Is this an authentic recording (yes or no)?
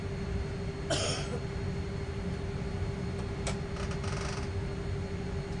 yes